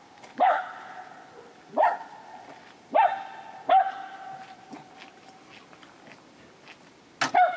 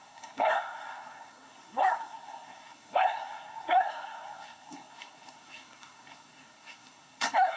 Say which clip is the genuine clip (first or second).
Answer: first